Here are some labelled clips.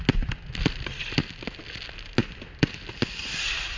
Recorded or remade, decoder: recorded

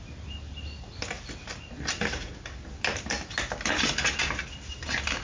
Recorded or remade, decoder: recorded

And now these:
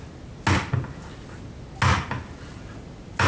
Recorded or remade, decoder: recorded